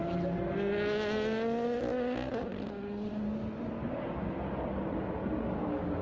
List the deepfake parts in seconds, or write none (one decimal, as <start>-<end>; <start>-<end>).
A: none